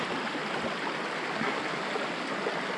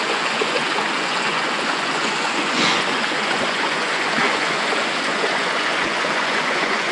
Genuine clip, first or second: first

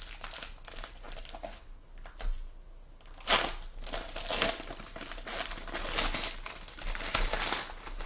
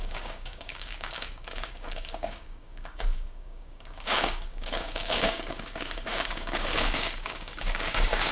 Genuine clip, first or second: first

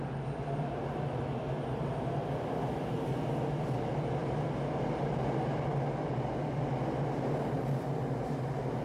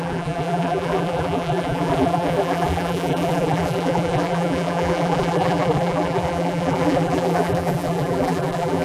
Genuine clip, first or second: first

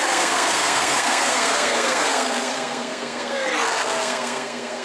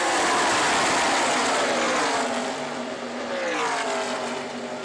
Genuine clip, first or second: second